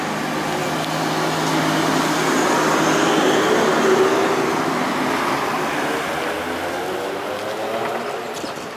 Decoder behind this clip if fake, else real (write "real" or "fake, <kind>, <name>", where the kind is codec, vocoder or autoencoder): real